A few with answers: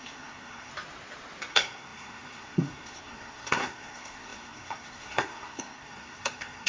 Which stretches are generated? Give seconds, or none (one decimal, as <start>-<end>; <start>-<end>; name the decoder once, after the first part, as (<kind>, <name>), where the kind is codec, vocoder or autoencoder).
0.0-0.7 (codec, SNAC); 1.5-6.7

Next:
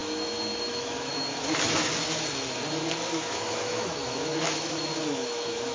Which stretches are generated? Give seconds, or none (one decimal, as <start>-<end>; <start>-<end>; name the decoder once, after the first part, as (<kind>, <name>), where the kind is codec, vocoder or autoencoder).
0.0-1.9 (autoencoder, DAC-VAE); 3.1-5.7

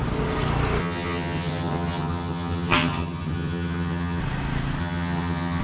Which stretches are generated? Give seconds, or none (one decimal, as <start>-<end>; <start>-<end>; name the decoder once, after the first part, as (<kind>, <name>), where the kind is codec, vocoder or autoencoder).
0.8-4.2 (vocoder, HiFi-GAN); 4.8-5.6

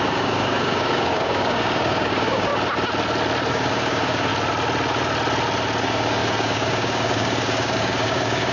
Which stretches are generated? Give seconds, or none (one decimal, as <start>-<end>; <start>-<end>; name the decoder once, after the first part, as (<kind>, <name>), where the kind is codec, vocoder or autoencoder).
0.0-2.5 (codec, DAC); 3.5-4.3; 5.8-8.5

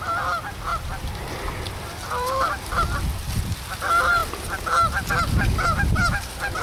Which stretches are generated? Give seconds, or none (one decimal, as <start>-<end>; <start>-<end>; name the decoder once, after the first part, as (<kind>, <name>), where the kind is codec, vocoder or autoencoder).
0.7-2.5 (vocoder, BigVGAN v2); 3.1-3.7

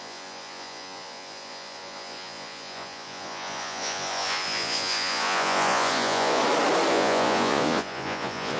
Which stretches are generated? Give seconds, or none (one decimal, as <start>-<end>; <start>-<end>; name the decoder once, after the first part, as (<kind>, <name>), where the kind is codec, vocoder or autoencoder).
0.0-6.4 (vocoder, Vocos); 6.9-8.6